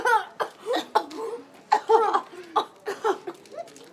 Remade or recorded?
recorded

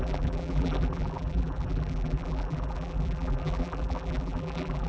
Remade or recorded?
remade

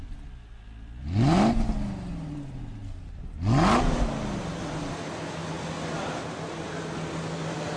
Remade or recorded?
recorded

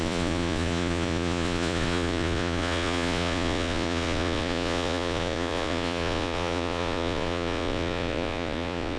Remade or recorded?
remade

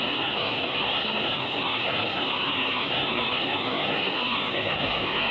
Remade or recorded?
remade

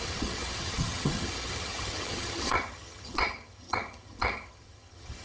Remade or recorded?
remade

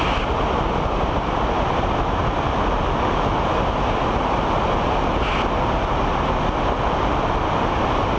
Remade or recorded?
recorded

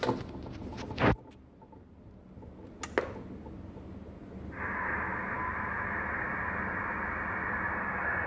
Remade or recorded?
recorded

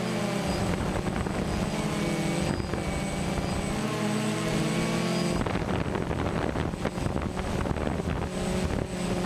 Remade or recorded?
recorded